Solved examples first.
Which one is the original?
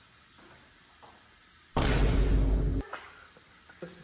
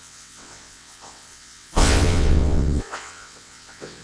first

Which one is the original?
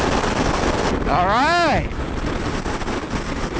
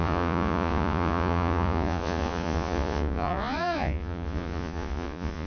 first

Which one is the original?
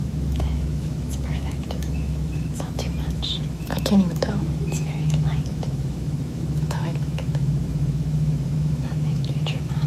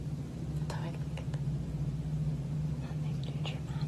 second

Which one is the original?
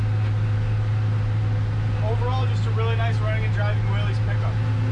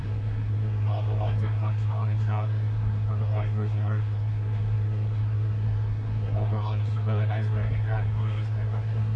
first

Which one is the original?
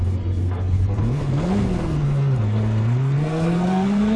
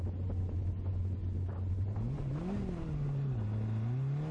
second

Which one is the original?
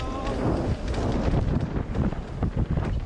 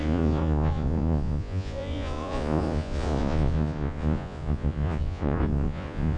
first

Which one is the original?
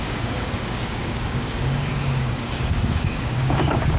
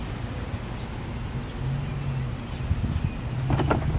second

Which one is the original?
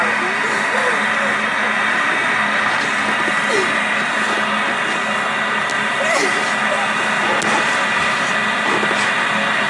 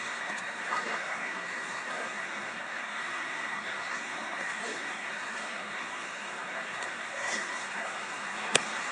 first